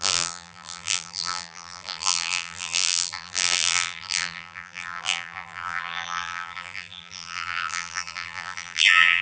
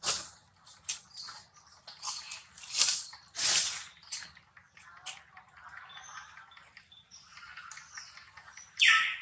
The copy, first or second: first